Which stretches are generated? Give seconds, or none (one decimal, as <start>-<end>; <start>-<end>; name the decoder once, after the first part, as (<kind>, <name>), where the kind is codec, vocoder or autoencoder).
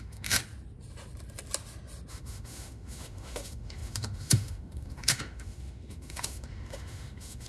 0.0-0.4 (autoencoder, DAC-VAE); 2.1-7.5